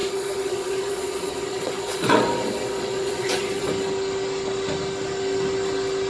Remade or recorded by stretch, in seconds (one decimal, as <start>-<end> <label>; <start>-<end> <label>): 0.0-3.7 remade; 3.7-6.1 recorded